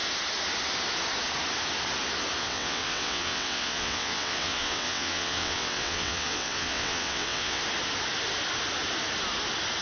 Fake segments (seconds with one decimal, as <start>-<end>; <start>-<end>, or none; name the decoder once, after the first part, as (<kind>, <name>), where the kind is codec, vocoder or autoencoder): 2.4-7.6 (vocoder, WaveNeXt)